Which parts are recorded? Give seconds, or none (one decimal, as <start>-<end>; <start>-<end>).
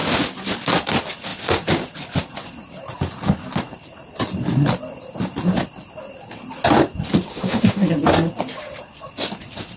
0.0-7.3; 7.9-9.8